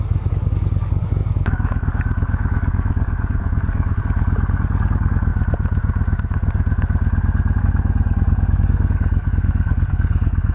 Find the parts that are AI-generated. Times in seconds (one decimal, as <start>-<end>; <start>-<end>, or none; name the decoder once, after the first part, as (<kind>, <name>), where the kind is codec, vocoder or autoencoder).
0.0-5.3 (codec, DAC); 7.6-10.5